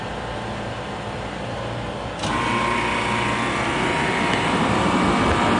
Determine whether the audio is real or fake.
real